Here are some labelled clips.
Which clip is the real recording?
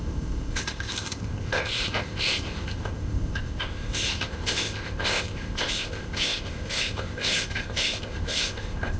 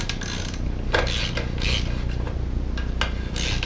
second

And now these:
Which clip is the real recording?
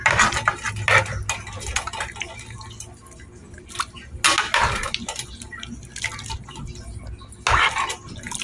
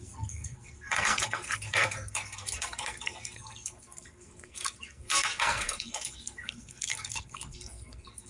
first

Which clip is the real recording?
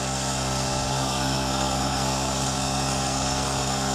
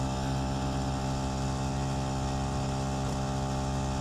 second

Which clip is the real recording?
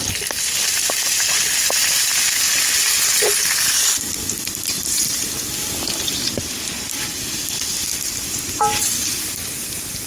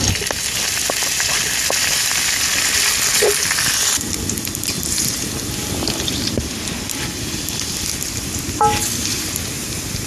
second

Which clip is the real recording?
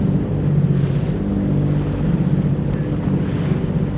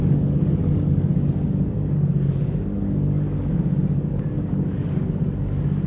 first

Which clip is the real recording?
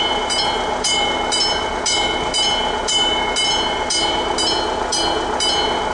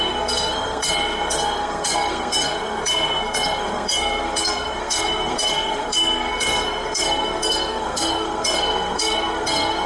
first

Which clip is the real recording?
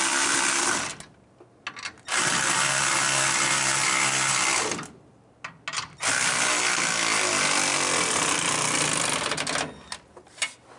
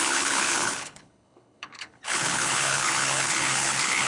first